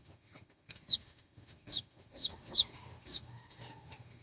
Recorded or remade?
remade